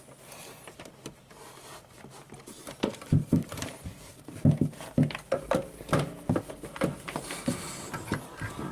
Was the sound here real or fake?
real